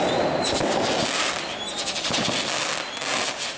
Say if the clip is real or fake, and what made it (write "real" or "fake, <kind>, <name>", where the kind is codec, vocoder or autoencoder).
real